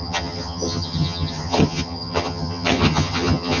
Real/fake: fake